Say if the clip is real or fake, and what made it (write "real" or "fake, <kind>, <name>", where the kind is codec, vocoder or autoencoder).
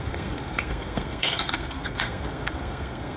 fake, codec, SNAC